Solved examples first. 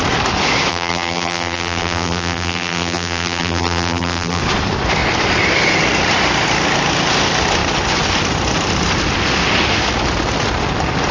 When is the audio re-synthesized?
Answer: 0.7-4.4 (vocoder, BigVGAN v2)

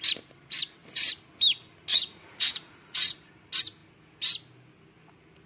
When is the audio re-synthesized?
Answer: 1.9-3.3 (vocoder, Vocos)